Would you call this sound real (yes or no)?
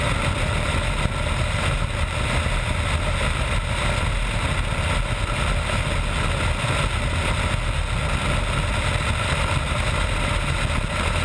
yes